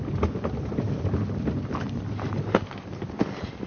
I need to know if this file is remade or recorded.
recorded